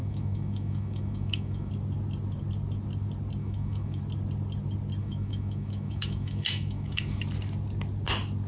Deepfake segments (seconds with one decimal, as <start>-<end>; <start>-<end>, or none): 0.0-1.7; 3.4-4.0; 5.0-7.2